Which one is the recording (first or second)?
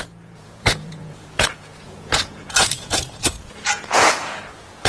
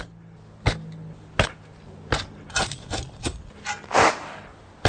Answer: second